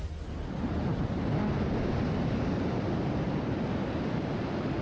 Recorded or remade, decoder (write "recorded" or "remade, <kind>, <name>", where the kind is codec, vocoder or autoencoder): recorded